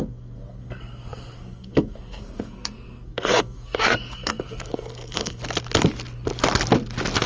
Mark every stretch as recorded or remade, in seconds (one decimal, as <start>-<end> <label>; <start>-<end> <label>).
0.0-5.4 remade; 5.4-7.3 recorded